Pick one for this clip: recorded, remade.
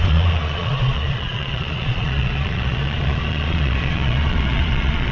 remade